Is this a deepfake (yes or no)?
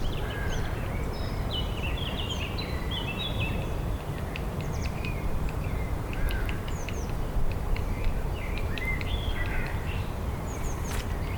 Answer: yes